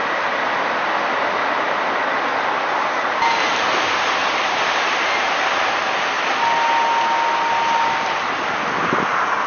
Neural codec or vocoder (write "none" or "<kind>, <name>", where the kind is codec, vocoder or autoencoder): none